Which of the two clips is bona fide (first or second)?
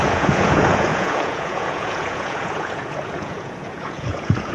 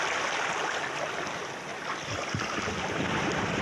second